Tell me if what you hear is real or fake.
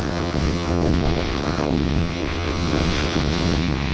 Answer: fake